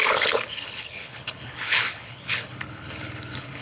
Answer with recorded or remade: remade